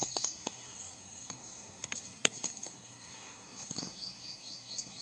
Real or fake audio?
fake